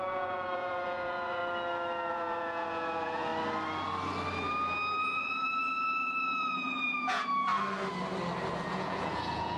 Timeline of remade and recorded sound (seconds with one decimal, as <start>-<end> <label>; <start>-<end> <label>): 0.0-1.4 remade; 1.4-2.1 recorded; 2.1-3.3 remade; 3.3-5.0 recorded; 5.0-7.5 remade; 7.5-8.7 recorded; 8.7-9.6 remade